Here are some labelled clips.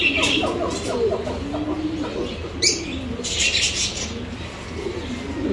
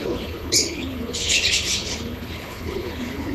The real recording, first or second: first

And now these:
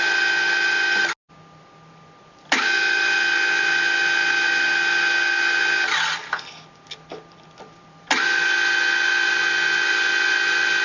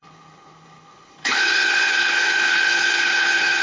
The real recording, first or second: first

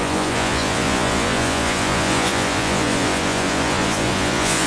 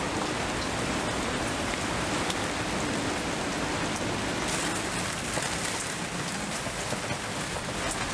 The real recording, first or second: second